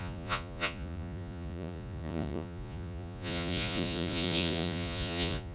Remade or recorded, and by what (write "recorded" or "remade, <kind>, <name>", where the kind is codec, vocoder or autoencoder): remade, vocoder, Vocos